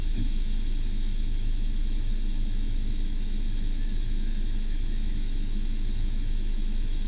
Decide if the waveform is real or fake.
fake